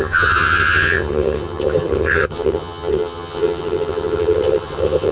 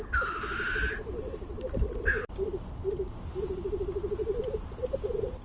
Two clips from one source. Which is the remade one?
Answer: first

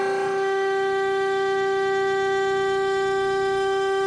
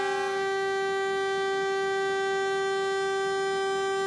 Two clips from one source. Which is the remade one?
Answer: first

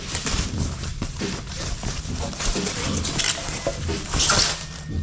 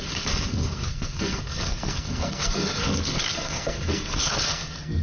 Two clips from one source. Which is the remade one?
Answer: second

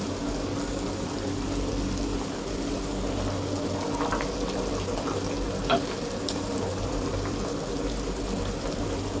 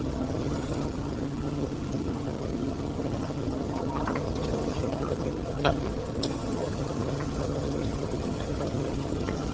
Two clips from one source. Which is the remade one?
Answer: second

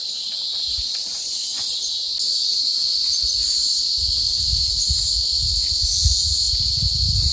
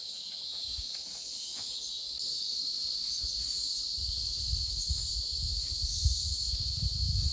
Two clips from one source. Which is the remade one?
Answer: second